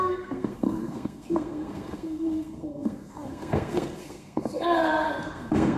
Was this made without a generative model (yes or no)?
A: no